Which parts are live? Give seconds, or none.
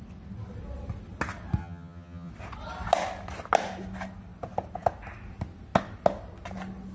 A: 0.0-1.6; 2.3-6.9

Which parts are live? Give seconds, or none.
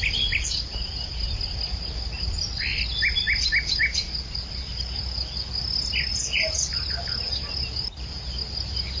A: 0.0-6.1; 6.7-9.0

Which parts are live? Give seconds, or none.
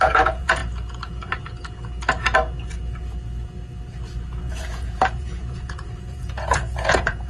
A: 0.6-4.4